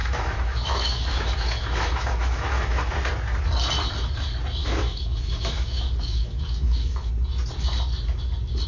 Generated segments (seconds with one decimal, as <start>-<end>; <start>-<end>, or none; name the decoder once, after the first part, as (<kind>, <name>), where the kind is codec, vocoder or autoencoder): 0.0-2.9 (autoencoder, DAC-VAE); 4.6-7.1